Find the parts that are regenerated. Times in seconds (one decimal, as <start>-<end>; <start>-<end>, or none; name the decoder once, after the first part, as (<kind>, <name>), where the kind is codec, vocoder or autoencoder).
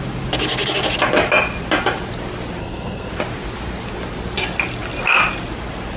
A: 2.6-3.1 (codec, SNAC)